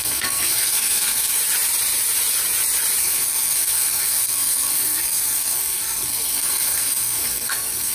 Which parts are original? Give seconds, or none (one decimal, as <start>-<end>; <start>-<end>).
1.4-3.0